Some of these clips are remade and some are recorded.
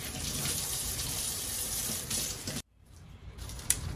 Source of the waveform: remade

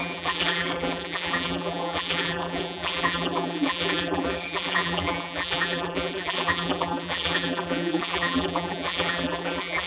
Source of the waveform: remade